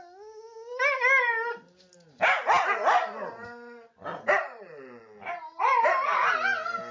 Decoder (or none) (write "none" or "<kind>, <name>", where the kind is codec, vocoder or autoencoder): none